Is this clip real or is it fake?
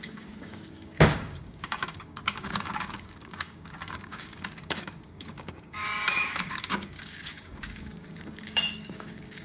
fake